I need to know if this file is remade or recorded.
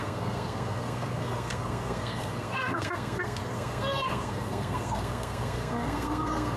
remade